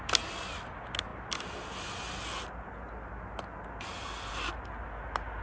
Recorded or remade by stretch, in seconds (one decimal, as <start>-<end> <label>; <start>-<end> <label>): 0.0-5.4 recorded